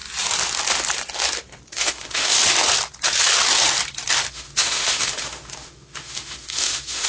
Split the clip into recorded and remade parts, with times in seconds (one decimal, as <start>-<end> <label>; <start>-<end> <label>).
0.0-1.7 recorded; 1.7-2.4 remade; 2.4-4.3 recorded; 4.3-7.1 remade